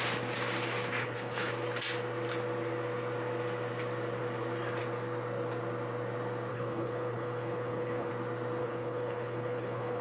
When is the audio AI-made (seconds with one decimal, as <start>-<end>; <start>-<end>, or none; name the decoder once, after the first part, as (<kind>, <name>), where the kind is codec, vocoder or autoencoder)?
1.0-1.5 (codec, HILCodec); 6.5-8.1; 8.6-10.0